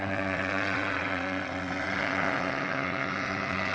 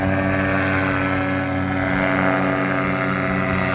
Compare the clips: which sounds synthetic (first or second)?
first